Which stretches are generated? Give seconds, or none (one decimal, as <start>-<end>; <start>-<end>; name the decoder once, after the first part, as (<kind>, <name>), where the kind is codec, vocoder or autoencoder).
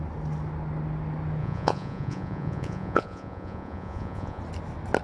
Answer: 1.4-4.4 (vocoder, Vocos)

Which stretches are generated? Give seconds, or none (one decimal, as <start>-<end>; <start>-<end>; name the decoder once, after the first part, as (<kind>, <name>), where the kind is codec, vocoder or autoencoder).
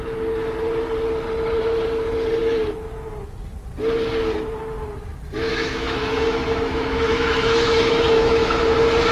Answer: 5.5-8.6 (autoencoder, DAC-VAE)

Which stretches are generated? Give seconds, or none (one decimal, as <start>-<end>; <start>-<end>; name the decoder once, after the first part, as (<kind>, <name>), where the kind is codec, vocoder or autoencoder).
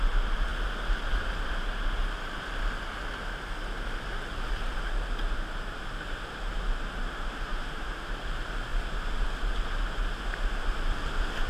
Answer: 7.1-8.1 (autoencoder, DAC-VAE)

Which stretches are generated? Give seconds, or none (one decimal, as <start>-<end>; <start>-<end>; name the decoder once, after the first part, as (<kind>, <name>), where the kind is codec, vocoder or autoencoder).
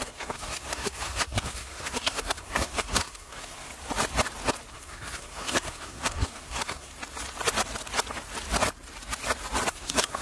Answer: 0.0-3.7 (codec, SNAC); 4.7-6.9; 9.7-10.2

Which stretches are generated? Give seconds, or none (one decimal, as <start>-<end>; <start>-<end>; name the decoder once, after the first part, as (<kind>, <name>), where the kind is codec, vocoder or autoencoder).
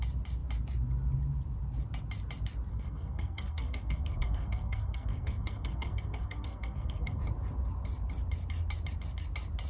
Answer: 2.7-7.2 (codec, SNAC)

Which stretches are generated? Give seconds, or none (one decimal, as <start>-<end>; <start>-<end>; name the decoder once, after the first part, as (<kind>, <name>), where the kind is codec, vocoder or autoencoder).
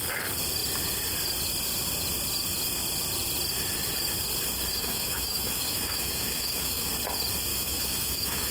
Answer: 4.7-6.9 (autoencoder, DAC-VAE); 7.5-8.5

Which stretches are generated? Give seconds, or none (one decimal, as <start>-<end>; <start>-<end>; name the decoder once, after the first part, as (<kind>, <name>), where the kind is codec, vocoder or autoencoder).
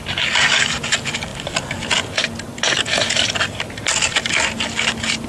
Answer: none